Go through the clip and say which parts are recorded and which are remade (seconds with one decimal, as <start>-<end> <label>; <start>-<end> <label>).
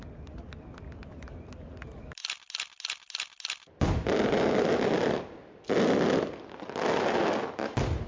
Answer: 0.0-8.1 recorded